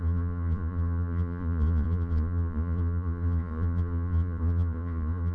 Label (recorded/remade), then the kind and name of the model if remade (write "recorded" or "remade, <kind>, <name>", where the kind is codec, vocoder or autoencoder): remade, vocoder, Vocos